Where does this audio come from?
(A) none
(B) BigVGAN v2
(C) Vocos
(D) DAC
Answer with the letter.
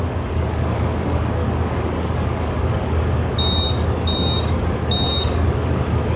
D